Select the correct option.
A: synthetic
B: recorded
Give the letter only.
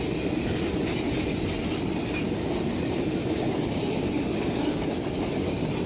B